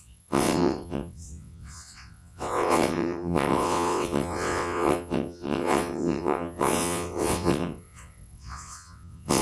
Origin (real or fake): fake